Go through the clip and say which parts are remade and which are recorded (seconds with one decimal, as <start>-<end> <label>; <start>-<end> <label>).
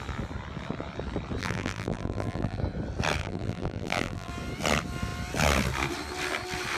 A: 0.0-1.4 recorded; 1.4-2.6 remade; 2.6-3.2 recorded; 3.2-4.3 remade; 4.3-6.8 recorded